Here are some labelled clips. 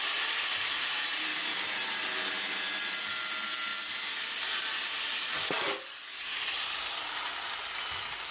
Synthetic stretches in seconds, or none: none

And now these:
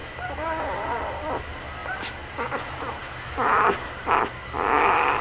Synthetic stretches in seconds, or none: none

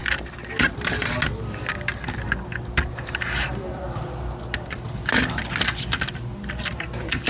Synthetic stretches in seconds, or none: none

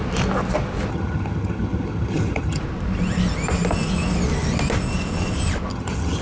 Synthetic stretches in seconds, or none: 0.9-2.6 (vocoder, HiFi-GAN); 5.7-6.2

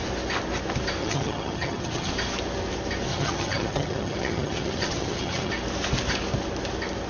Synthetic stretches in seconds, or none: 1.0-2.1 (vocoder, HiFi-GAN); 3.1-5.5

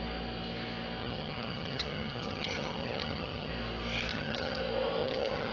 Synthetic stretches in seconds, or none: 1.0-3.5 (vocoder, HiFi-GAN); 4.1-4.6; 5.0-5.5